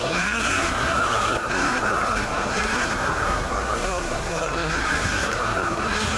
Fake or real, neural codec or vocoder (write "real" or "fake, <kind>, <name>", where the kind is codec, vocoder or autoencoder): fake, codec, SNAC